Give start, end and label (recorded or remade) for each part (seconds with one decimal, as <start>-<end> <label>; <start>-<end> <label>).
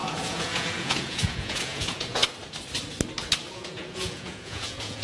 0.0-2.2 remade; 2.2-3.5 recorded; 3.5-5.0 remade